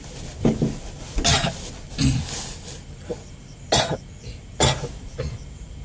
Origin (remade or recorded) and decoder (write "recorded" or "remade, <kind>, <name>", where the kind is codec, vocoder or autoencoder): recorded